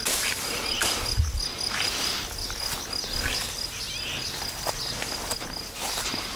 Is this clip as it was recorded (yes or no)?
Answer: yes